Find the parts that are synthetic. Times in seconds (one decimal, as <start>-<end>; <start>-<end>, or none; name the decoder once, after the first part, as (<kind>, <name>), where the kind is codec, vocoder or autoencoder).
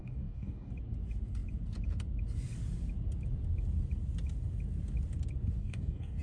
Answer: 0.0-0.7 (codec, DAC); 5.6-6.2